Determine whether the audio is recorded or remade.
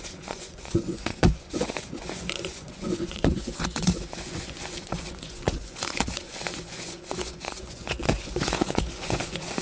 remade